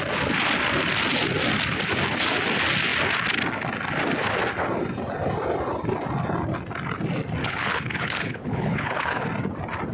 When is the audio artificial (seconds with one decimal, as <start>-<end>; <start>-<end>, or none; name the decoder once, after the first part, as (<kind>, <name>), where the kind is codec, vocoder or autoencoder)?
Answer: 7.4-9.3 (codec, HILCodec)